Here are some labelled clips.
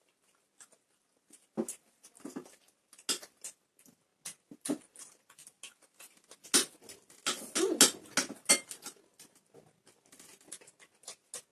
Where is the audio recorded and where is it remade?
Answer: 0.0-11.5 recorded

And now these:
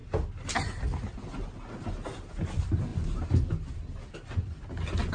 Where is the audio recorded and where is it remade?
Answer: 0.0-5.1 recorded

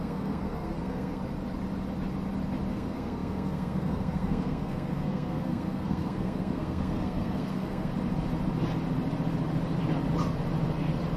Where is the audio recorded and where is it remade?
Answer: 0.0-1.2 remade; 1.2-2.7 recorded; 2.7-7.9 remade; 7.9-11.2 recorded